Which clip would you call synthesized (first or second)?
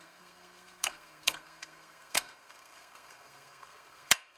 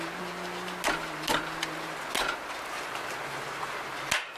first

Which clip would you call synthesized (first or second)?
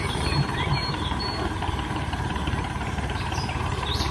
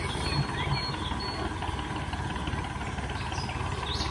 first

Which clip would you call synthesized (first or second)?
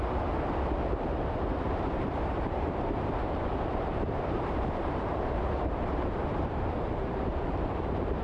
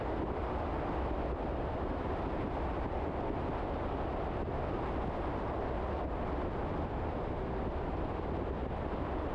first